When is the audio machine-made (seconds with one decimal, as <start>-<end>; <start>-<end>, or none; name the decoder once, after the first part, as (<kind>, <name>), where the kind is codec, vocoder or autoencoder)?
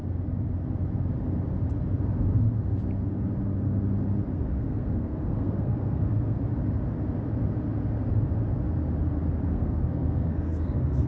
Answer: 4.3-6.4 (codec, SNAC); 9.5-11.1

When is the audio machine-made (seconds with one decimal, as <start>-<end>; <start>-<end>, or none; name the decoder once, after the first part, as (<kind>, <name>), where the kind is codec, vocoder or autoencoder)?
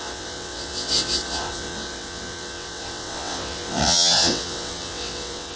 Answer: 0.0-5.6 (vocoder, WaveNeXt)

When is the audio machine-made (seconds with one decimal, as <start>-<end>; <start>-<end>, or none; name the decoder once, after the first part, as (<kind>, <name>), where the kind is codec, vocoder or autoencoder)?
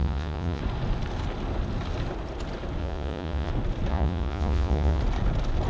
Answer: 0.0-0.6 (vocoder, Vocos); 2.8-3.5; 3.9-5.0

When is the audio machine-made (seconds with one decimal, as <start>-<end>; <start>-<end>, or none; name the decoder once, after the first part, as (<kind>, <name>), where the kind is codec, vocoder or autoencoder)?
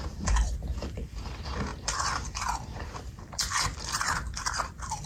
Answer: 0.0-5.1 (vocoder, BigVGAN v2)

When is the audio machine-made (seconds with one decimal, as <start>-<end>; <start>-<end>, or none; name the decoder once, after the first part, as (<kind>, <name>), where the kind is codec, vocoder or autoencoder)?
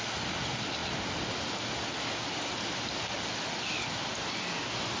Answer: none